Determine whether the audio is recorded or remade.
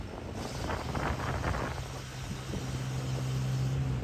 recorded